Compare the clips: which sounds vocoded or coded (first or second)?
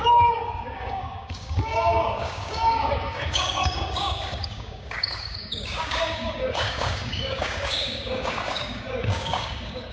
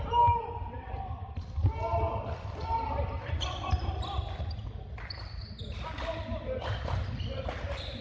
first